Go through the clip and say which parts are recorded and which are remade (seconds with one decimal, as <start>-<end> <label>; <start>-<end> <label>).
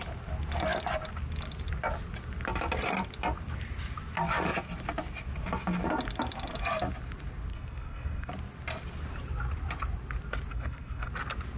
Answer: 0.0-7.5 recorded; 7.5-8.3 remade; 8.3-10.5 recorded; 10.5-11.1 remade; 11.1-11.6 recorded